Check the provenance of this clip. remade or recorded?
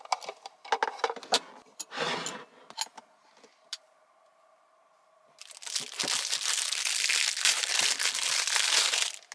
recorded